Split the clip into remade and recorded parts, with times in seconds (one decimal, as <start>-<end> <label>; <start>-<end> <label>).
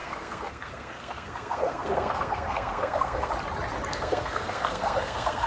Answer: 0.0-3.3 remade; 3.3-3.9 recorded; 3.9-5.5 remade